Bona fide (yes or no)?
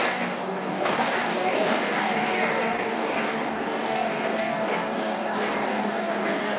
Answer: no